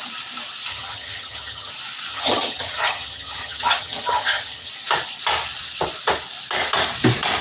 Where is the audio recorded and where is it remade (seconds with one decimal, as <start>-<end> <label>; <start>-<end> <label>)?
0.0-0.7 recorded; 0.7-1.7 remade; 1.7-2.1 recorded; 2.1-4.7 remade; 4.7-7.4 recorded